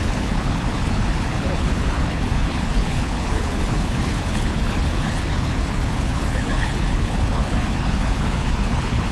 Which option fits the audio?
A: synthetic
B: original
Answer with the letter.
A